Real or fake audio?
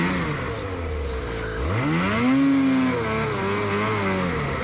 real